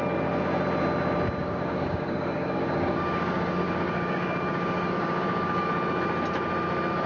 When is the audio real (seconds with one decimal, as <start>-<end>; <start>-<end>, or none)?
0.0-1.4; 5.7-7.1